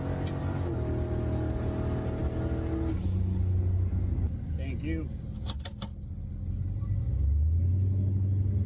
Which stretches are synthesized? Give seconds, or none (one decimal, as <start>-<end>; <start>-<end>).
none